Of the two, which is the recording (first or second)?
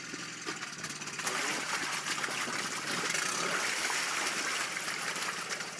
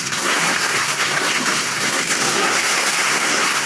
first